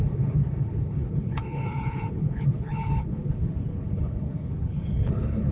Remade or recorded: remade